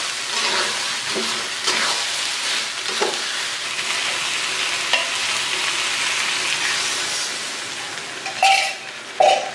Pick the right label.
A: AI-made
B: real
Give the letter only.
B